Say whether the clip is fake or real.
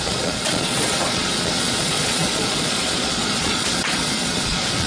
fake